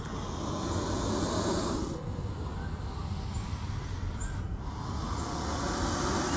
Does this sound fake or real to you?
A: real